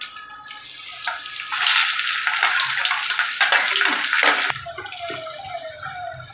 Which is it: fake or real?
real